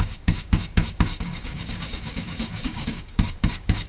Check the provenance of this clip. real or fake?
fake